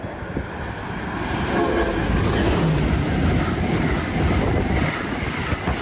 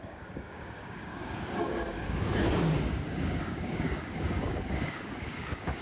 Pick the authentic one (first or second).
first